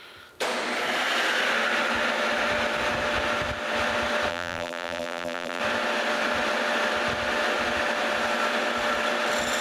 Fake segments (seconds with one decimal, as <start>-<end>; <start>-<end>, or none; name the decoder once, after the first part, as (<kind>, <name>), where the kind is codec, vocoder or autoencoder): 4.3-5.6 (vocoder, BigVGAN v2)